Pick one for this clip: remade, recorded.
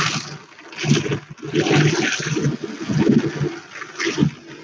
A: recorded